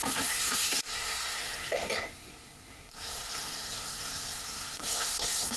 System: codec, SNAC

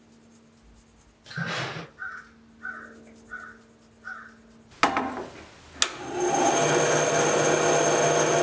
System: none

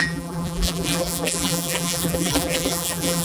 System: vocoder, BigVGAN v2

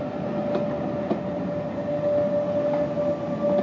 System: none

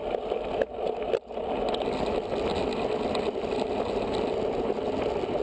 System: none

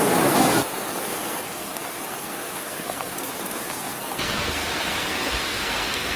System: codec, SNAC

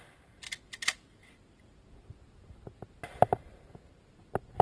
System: none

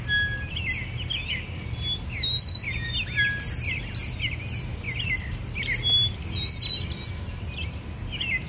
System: none